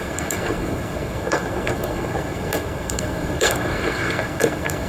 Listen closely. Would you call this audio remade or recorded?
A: remade